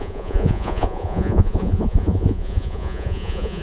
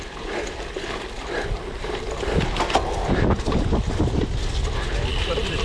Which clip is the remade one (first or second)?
first